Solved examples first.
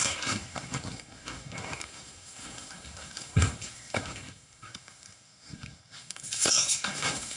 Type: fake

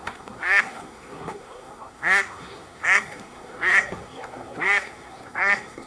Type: fake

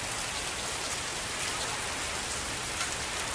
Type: real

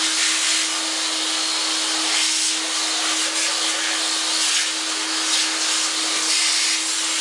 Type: real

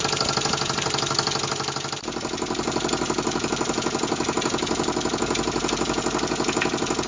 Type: real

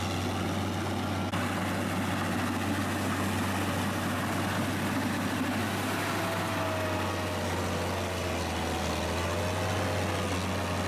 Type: real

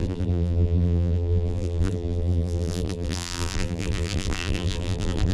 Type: fake